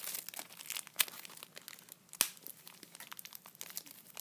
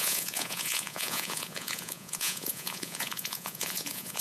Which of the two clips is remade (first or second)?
second